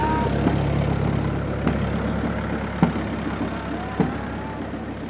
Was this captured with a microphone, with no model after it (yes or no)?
yes